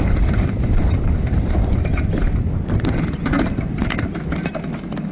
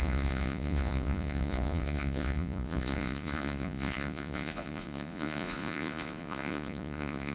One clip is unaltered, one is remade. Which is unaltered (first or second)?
first